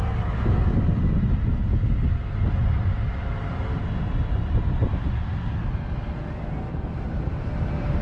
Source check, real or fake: real